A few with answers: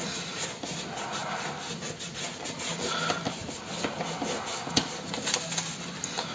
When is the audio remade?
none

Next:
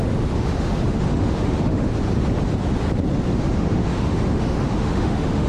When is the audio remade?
0.0-1.9 (autoencoder, DAC-VAE); 3.4-5.5